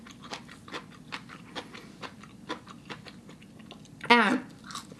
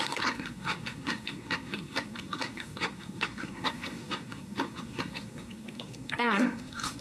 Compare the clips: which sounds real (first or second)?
first